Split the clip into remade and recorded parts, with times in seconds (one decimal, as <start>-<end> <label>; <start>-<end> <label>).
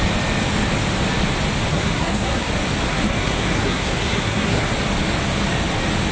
0.0-1.7 recorded; 1.7-2.5 remade; 2.5-2.9 recorded; 2.9-4.7 remade; 4.7-6.1 recorded